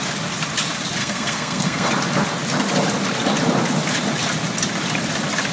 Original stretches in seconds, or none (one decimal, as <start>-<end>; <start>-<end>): 0.0-1.0; 1.9-5.5